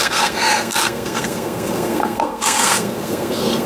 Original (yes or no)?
no